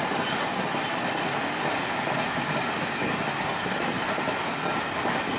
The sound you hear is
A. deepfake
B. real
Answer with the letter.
B